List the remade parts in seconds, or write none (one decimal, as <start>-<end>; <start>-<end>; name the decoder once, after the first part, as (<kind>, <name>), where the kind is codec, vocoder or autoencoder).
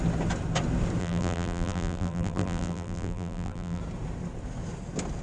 1.0-3.8 (vocoder, BigVGAN v2)